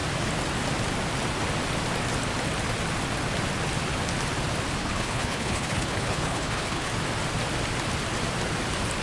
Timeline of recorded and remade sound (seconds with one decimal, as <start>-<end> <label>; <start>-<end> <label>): 0.0-4.8 recorded; 4.8-6.9 remade; 6.9-9.0 recorded